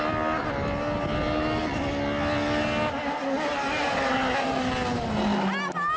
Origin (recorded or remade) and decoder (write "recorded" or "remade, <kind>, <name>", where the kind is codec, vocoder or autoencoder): recorded